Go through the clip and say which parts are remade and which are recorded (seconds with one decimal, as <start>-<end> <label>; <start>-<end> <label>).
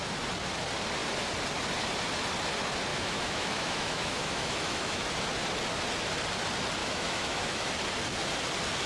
0.0-2.9 recorded; 2.9-5.1 remade; 5.1-6.8 recorded; 6.8-7.7 remade; 7.7-8.9 recorded